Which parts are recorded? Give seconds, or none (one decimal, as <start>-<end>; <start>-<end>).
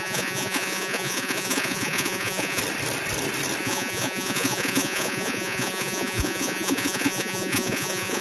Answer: 2.6-3.6